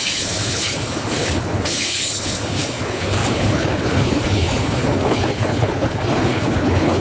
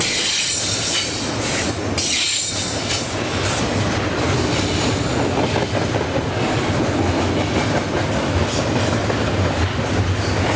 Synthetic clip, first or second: first